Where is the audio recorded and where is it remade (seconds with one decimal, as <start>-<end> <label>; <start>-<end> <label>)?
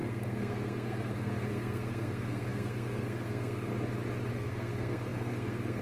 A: 0.0-3.7 remade; 3.7-4.3 recorded; 4.3-5.8 remade